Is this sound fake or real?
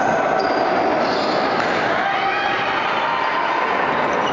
fake